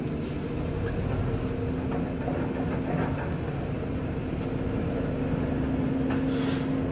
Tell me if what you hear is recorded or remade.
recorded